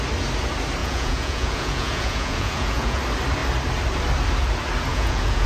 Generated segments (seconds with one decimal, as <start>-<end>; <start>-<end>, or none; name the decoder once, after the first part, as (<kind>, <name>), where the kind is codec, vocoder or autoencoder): 0.8-3.0 (vocoder, Vocos); 4.9-5.5